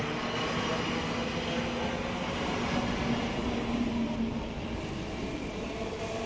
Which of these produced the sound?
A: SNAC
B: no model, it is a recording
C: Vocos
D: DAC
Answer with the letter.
B